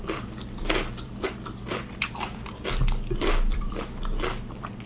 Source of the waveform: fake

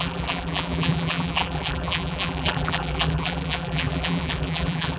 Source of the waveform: fake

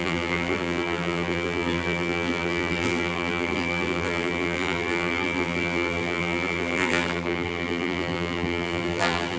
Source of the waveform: fake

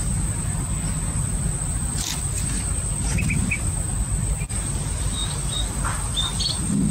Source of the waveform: real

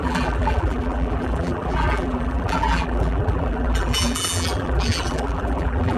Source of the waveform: fake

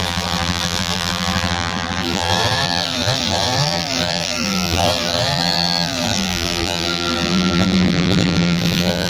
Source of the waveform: fake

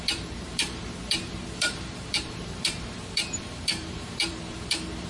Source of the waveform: fake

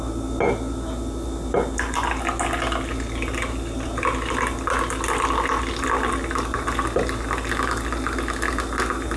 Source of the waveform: real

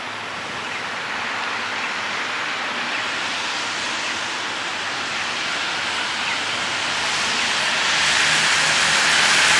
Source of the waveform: real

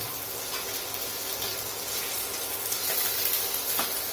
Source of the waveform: real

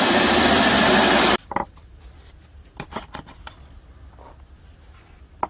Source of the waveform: fake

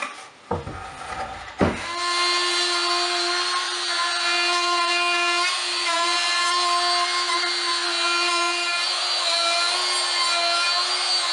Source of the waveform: real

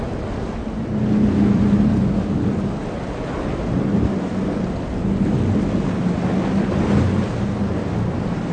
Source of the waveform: real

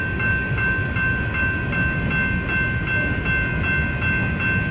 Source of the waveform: real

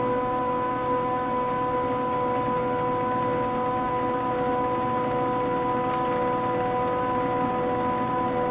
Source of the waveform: real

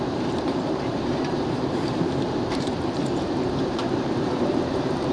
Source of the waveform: fake